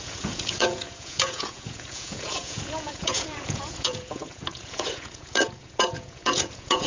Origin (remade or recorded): remade